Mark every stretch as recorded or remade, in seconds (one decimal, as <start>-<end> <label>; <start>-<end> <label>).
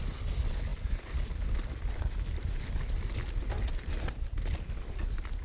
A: 0.0-5.4 recorded